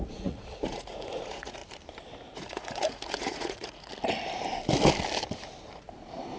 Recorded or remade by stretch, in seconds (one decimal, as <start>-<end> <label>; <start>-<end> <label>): 0.0-1.6 remade; 1.6-2.3 recorded; 2.3-3.9 remade; 3.9-6.4 recorded